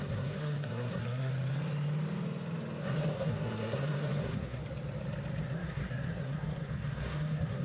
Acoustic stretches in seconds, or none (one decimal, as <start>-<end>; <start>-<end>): 1.3-2.8; 4.6-5.4